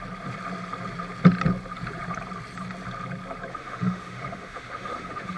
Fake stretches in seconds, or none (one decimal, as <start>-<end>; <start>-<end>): 3.5-5.4